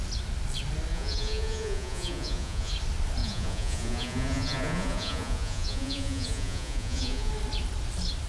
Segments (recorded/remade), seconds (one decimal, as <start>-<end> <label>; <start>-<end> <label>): 0.0-0.9 recorded; 0.9-2.7 remade; 2.7-3.2 recorded; 3.2-7.3 remade; 7.3-8.3 recorded